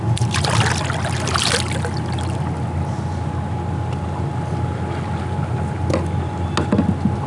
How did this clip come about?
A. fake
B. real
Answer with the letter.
B